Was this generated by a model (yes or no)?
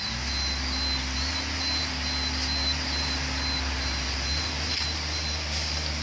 no